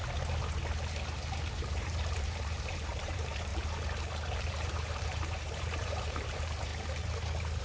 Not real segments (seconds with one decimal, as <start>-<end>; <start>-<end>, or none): 1.5-3.5; 4.4-6.7